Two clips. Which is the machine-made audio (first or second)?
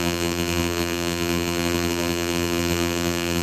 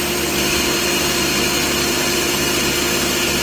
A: first